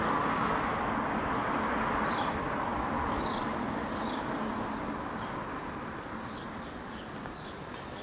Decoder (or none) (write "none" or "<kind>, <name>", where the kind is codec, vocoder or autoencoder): none